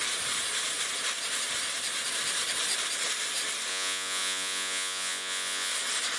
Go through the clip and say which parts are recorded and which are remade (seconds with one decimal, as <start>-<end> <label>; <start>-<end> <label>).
0.0-3.7 recorded; 3.7-5.7 remade; 5.7-6.2 recorded